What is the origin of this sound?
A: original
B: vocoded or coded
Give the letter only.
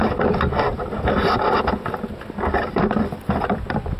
B